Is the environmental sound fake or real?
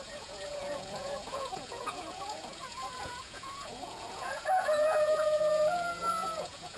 fake